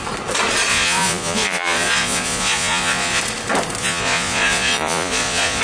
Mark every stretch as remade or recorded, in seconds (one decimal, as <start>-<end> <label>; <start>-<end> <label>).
0.0-0.7 recorded; 0.7-3.2 remade; 3.2-3.8 recorded; 3.8-5.6 remade